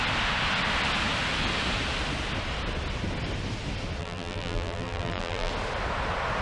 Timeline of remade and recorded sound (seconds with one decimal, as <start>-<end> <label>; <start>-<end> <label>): 0.0-4.0 recorded; 4.0-5.5 remade; 5.5-6.4 recorded